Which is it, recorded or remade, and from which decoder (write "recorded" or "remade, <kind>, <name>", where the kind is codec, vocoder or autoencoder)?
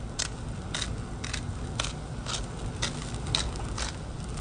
recorded